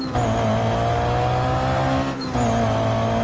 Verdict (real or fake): real